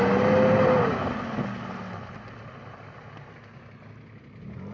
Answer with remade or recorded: recorded